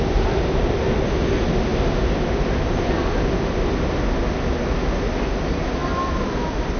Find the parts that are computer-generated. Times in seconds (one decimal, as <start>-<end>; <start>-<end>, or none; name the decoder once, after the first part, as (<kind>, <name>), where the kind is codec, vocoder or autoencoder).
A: none

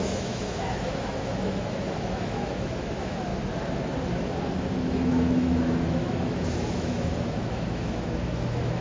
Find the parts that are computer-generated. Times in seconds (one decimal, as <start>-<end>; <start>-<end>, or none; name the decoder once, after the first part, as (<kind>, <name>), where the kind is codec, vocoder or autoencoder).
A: 0.0-3.3 (autoencoder, DAC-VAE); 4.9-8.8